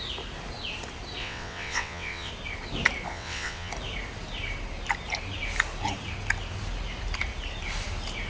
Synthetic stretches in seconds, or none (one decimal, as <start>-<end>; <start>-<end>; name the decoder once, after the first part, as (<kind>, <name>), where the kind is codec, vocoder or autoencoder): 1.2-2.3 (vocoder, WaveNeXt); 3.1-3.7